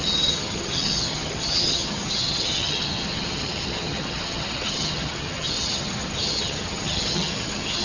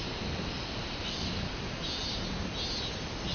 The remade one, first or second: first